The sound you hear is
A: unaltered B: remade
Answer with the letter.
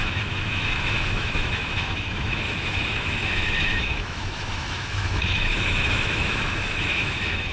B